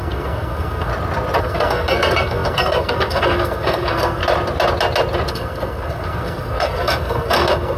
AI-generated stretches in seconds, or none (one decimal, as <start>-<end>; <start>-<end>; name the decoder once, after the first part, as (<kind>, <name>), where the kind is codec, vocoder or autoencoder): 0.0-0.9 (codec, SNAC); 1.4-4.2; 5.3-7.8